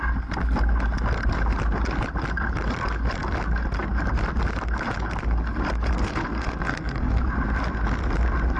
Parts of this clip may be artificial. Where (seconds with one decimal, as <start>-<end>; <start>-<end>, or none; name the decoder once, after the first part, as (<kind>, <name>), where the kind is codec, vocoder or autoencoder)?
5.9-7.3 (codec, SNAC)